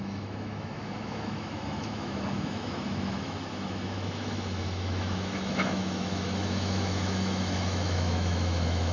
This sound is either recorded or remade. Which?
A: remade